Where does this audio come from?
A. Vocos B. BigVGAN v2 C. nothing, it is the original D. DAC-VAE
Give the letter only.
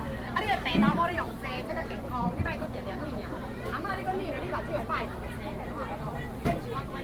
B